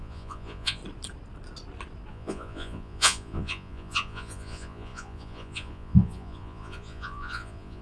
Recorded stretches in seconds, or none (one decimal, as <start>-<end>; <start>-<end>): 0.8-2.1